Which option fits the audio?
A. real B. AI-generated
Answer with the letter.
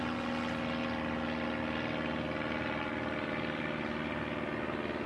A